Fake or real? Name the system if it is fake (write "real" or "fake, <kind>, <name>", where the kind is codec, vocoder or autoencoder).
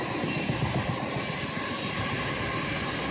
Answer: real